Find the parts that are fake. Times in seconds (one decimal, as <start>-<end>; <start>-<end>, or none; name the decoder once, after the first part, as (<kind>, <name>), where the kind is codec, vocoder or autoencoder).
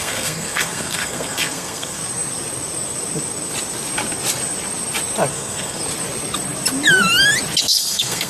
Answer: 0.0-2.0 (codec, SNAC); 5.3-5.8; 7.6-8.3